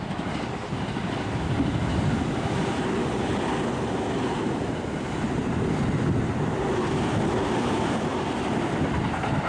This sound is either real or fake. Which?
real